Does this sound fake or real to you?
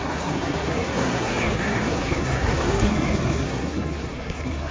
fake